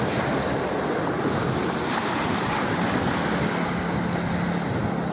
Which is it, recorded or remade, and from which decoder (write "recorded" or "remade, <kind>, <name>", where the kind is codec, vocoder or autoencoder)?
recorded